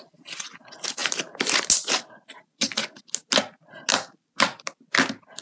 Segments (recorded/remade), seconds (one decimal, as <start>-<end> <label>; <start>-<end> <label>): 0.0-5.4 recorded